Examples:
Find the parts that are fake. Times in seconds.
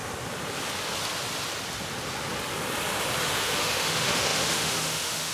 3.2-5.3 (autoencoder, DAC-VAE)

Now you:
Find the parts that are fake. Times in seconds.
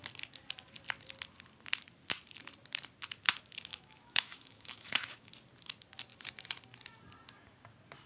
3.7-5.3 (autoencoder, DAC-VAE)